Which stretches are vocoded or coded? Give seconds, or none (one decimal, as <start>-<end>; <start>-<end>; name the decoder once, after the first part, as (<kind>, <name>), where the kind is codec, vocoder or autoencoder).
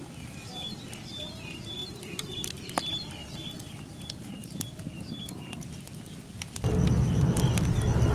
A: 1.8-3.2 (vocoder, BigVGAN v2); 4.4-5.3